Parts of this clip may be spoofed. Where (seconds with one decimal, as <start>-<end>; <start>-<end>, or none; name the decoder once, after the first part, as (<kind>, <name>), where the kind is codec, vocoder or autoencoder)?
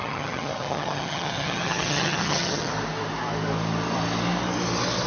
0.0-2.7 (vocoder, HiFi-GAN)